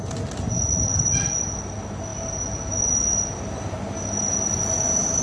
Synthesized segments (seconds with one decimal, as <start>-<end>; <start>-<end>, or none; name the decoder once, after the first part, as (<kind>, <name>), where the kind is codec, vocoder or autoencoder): none